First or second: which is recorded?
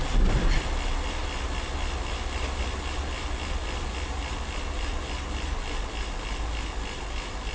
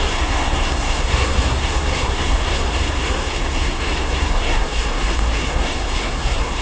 first